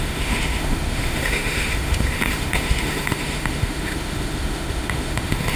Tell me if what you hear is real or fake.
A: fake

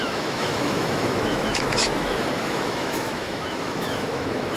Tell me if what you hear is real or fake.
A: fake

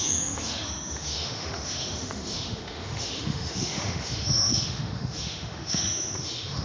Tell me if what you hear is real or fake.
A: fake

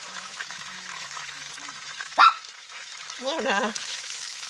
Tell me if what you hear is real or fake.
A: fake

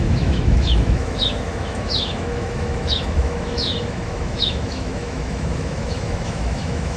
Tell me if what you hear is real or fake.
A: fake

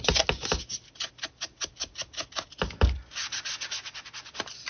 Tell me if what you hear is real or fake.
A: real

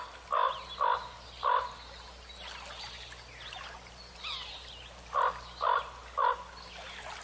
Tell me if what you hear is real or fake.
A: real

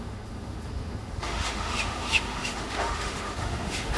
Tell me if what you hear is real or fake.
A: fake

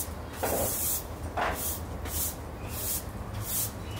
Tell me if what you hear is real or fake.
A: real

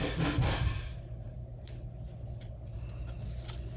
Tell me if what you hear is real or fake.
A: real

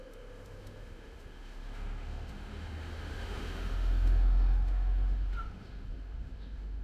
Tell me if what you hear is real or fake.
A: fake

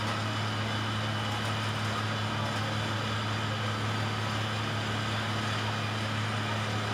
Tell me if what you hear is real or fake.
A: real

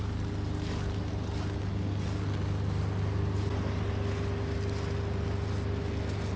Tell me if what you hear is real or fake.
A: real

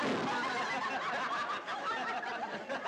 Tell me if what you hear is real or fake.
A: real